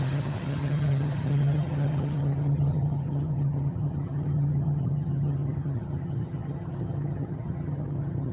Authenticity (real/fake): fake